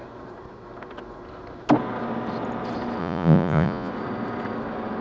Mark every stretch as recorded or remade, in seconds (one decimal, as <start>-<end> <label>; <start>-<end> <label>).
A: 0.0-3.0 recorded; 3.0-3.9 remade; 3.9-5.0 recorded